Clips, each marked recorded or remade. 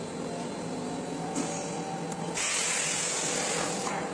recorded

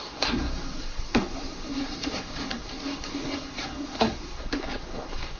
remade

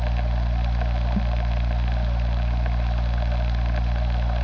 recorded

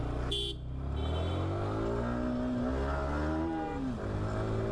recorded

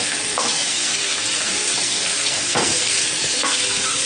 remade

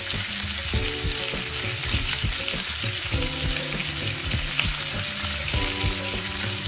recorded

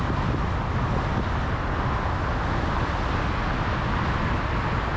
recorded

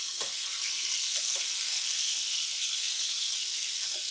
remade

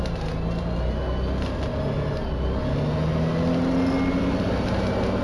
recorded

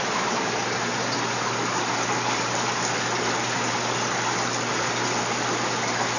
recorded